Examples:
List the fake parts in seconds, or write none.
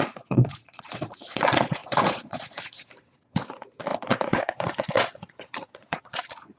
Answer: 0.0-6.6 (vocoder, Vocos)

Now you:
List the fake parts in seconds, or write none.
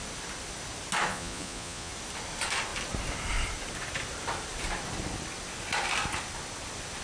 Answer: 1.1-1.9 (vocoder, Vocos)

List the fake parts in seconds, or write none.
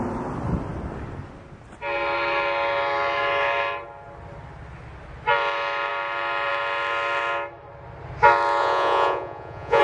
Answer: 8.6-9.8 (vocoder, Vocos)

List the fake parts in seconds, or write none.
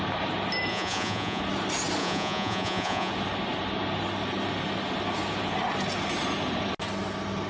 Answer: 0.7-1.4 (vocoder, Vocos); 2.0-3.1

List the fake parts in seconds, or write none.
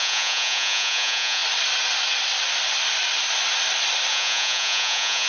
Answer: 0.0-1.4 (vocoder, Vocos); 4.1-5.3